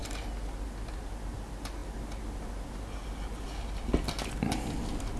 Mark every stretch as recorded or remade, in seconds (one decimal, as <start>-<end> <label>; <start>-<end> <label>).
0.0-5.2 recorded

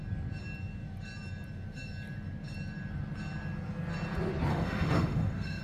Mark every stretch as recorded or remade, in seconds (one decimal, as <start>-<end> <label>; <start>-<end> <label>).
0.0-4.5 recorded; 4.5-5.6 remade